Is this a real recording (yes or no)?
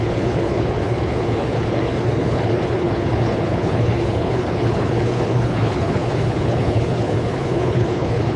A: no